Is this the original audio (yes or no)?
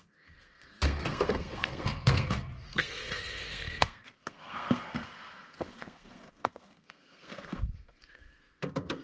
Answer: no